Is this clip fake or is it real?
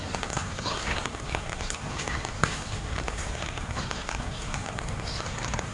fake